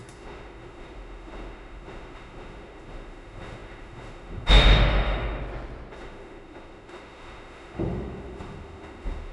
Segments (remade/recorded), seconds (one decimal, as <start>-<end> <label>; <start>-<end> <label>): 0.0-5.4 remade; 5.4-5.9 recorded; 5.9-9.3 remade